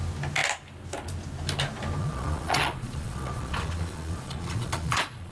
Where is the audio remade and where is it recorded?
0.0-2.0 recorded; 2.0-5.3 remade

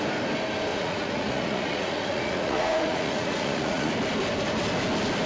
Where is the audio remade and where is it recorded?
0.0-0.7 recorded; 0.7-3.9 remade; 3.9-5.3 recorded

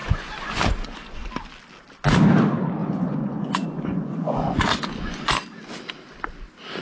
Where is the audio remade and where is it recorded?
0.0-1.3 remade; 1.3-2.8 recorded; 2.8-5.3 remade; 5.3-6.8 recorded

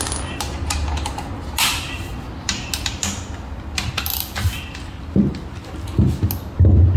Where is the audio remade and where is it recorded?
0.0-7.0 recorded